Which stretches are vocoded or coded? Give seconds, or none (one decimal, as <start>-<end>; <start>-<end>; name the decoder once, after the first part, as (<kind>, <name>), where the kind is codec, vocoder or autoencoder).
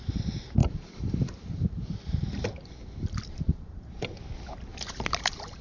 0.6-4.0 (vocoder, BigVGAN v2); 4.7-5.6